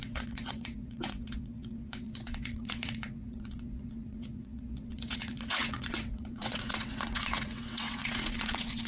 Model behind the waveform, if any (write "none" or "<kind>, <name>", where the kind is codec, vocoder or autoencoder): vocoder, WaveNeXt